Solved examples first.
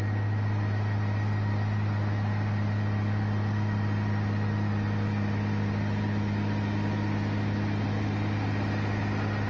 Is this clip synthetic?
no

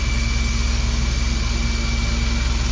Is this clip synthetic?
no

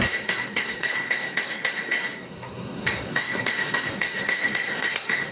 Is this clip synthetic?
yes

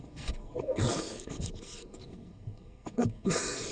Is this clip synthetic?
yes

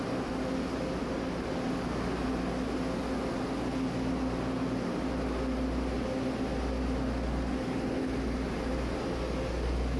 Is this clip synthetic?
no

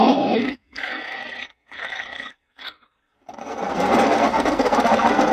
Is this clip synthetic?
yes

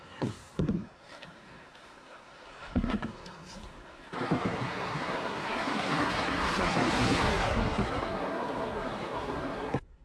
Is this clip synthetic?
yes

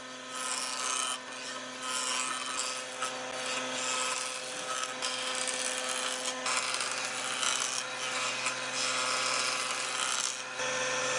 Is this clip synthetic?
no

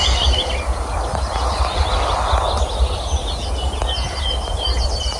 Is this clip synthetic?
no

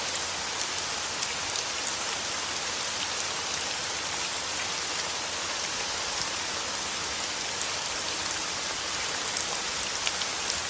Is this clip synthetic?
no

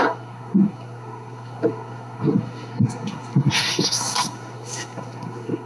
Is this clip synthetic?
yes